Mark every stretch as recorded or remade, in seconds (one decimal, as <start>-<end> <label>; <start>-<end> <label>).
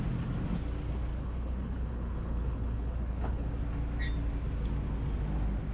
0.0-1.1 recorded; 1.1-3.5 remade; 3.5-5.7 recorded